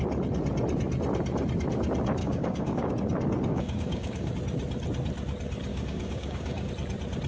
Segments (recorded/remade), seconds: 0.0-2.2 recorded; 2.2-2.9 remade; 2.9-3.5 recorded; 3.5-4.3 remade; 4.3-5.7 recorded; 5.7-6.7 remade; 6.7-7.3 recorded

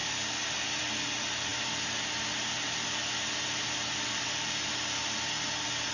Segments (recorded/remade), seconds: 0.0-5.9 recorded

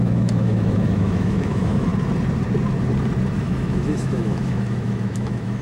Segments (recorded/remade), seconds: 0.0-1.9 remade; 1.9-3.4 recorded; 3.4-5.6 remade